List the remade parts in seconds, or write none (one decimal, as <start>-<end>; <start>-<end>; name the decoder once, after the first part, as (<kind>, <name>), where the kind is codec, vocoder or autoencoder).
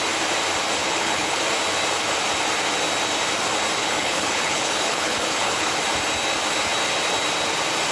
0.8-1.4 (codec, HILCodec); 3.8-5.8